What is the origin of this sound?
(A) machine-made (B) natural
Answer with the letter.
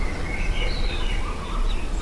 B